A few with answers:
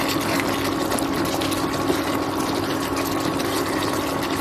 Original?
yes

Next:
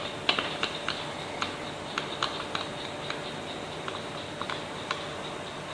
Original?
yes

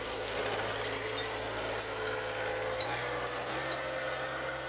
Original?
yes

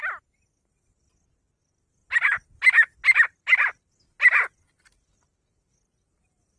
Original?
yes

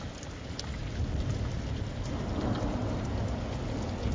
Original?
yes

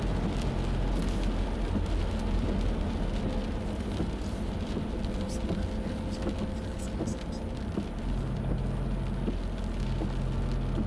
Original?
yes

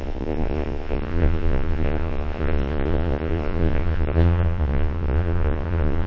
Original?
no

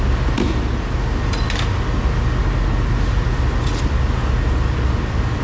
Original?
yes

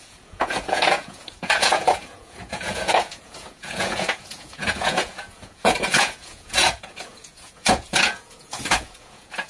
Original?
no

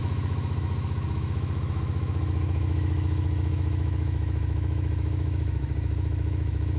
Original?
no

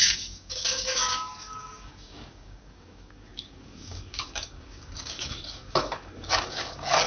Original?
no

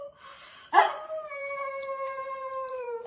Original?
no